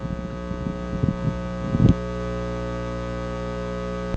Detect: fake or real real